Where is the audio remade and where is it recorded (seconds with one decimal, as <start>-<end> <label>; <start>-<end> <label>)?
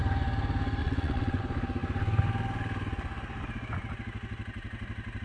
0.0-0.8 recorded; 0.8-1.4 remade; 1.4-5.2 recorded